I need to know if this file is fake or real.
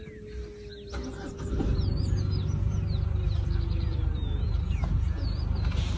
real